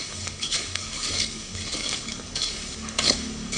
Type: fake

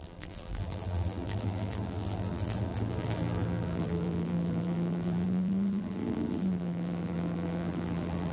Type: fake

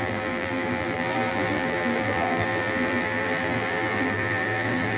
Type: fake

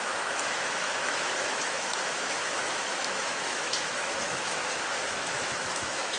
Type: fake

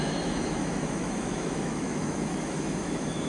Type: fake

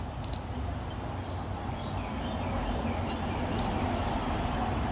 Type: real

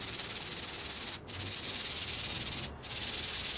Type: real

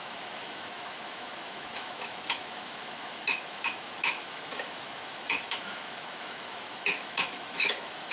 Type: fake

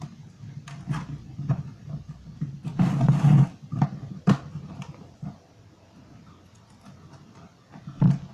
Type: real